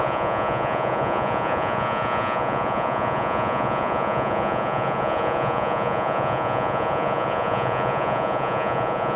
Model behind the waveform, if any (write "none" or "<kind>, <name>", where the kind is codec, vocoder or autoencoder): vocoder, Vocos